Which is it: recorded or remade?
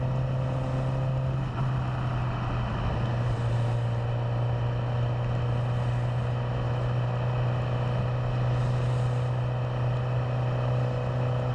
recorded